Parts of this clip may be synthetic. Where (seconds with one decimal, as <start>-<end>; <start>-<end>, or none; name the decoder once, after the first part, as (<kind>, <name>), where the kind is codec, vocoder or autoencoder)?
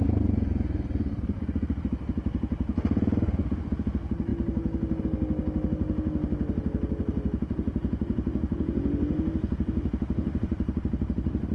none